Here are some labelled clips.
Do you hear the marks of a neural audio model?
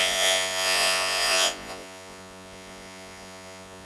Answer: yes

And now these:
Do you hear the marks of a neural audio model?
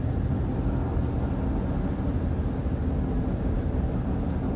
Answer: no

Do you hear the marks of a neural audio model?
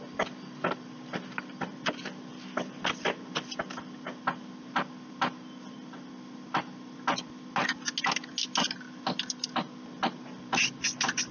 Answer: no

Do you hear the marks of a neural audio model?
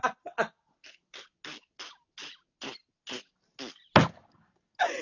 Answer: no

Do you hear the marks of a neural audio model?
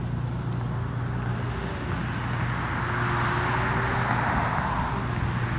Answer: no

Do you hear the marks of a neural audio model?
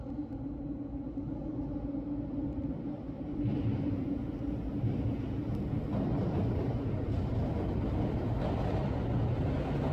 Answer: no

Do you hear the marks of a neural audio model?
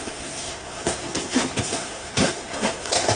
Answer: yes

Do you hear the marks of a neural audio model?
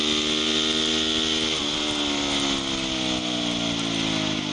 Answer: no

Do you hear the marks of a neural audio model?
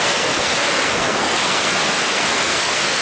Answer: yes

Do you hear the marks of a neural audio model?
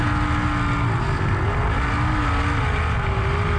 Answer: no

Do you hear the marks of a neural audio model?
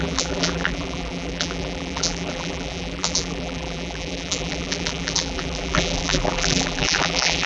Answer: yes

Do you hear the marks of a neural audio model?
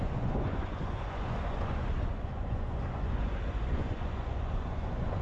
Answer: yes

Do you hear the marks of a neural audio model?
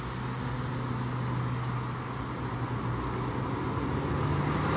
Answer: no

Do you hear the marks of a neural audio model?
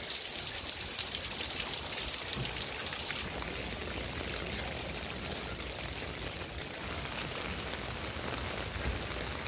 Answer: no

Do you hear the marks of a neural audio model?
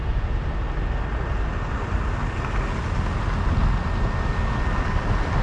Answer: no